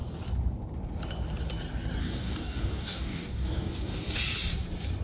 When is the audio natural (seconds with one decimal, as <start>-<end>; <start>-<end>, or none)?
0.0-2.0; 4.2-5.0